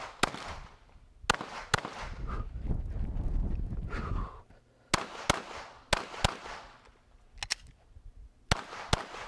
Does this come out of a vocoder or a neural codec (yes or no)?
no